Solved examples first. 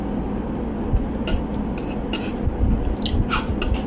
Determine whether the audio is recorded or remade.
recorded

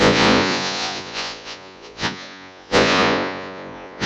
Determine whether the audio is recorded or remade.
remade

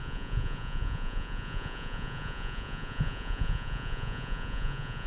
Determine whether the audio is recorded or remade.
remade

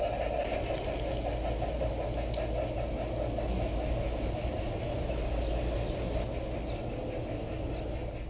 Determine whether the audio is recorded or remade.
recorded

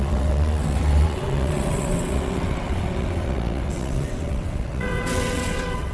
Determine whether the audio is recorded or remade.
remade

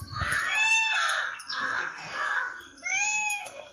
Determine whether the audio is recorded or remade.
remade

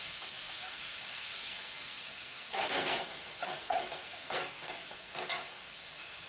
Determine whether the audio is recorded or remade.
remade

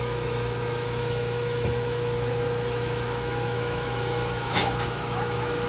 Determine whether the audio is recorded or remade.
remade